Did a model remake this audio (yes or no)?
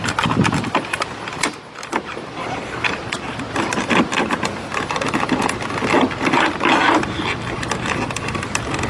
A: no